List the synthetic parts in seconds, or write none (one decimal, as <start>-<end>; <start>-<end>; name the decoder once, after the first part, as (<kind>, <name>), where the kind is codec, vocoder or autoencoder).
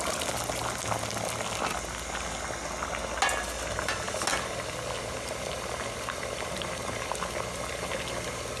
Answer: 4.3-7.1 (vocoder, BigVGAN v2)